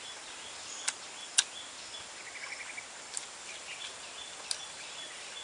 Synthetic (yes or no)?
no